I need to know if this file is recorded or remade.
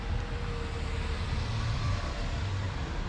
recorded